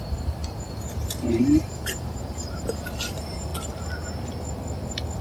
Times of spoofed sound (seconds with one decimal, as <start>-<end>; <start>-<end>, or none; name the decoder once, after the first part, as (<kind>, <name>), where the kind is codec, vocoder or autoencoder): 0.0-0.4 (vocoder, BigVGAN v2); 0.9-3.5